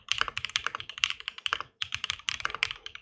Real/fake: fake